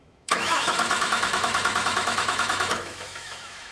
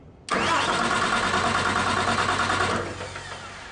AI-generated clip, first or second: first